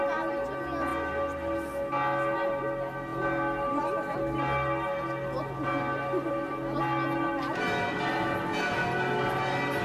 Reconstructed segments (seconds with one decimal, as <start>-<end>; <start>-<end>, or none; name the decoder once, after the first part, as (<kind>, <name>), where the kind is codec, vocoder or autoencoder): none